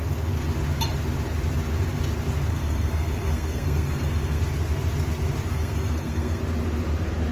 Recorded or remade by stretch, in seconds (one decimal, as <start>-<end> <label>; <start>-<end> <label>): 0.0-2.5 recorded; 2.5-4.4 remade; 4.4-5.5 recorded; 5.5-6.4 remade; 6.4-7.3 recorded